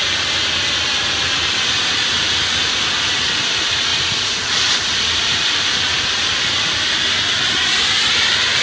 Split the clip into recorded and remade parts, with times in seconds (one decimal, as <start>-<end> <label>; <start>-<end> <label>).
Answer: 0.0-8.6 recorded